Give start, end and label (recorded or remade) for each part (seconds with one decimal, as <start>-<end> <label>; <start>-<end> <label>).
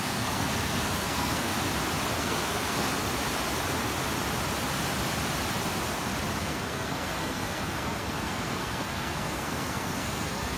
0.0-1.5 remade; 1.5-2.2 recorded; 2.2-2.9 remade; 2.9-6.4 recorded; 6.4-10.6 remade